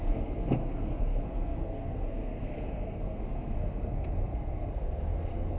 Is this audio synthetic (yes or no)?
yes